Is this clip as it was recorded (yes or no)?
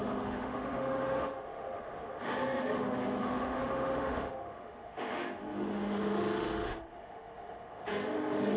no